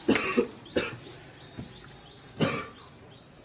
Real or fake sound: real